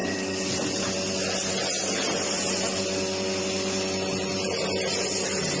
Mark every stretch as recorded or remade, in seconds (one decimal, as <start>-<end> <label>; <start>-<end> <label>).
0.0-5.6 recorded